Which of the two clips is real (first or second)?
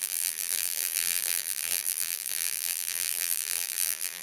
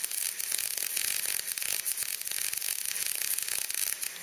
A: second